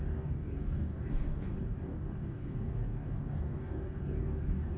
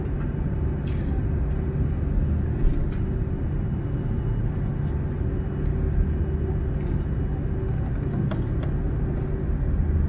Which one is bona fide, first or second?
second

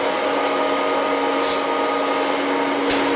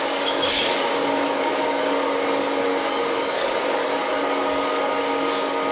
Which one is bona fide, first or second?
first